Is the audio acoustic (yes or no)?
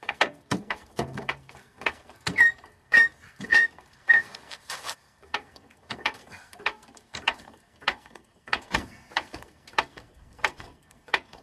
no